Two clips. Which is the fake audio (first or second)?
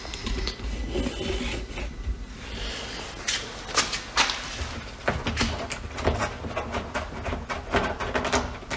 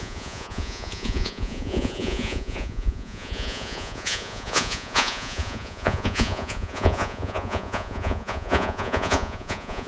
second